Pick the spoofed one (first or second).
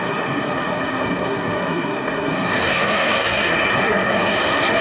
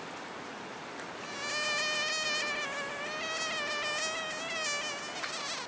first